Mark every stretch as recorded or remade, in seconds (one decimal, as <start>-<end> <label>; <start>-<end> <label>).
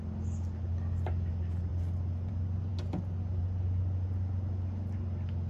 0.0-5.5 recorded